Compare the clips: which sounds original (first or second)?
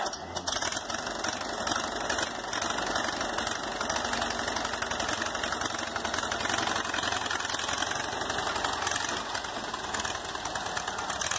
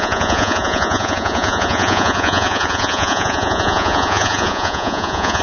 first